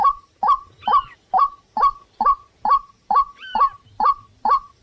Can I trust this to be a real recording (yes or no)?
no